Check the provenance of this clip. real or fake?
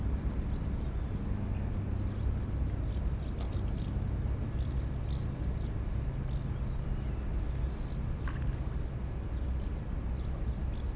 real